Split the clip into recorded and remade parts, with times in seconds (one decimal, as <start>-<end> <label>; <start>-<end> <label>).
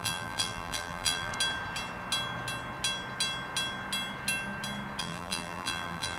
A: 0.0-1.3 remade; 1.3-5.0 recorded; 5.0-6.2 remade